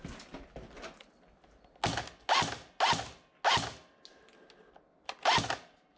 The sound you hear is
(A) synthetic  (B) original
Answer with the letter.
B